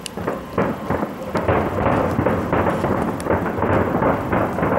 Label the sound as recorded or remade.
recorded